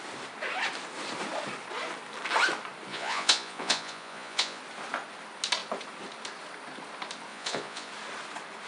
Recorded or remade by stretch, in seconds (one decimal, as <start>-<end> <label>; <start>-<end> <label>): 0.0-2.9 recorded; 2.9-4.6 remade; 4.6-7.3 recorded; 7.3-7.9 remade; 7.9-8.7 recorded